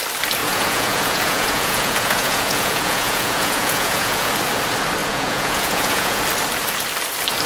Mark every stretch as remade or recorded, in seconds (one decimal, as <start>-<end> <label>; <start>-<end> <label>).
0.0-0.4 recorded; 0.4-4.3 remade; 4.3-5.0 recorded; 5.0-6.2 remade; 6.2-7.5 recorded